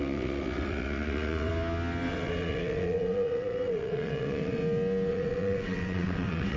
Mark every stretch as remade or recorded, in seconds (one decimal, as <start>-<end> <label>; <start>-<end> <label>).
0.0-1.5 remade; 1.5-2.1 recorded; 2.1-4.6 remade; 4.6-5.1 recorded; 5.1-6.6 remade